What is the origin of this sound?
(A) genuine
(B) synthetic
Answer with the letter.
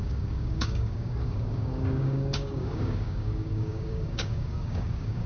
B